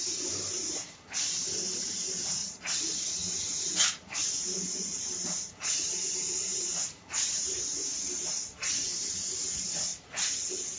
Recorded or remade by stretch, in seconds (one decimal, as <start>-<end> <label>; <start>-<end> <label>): 0.0-9.9 remade; 9.9-10.8 recorded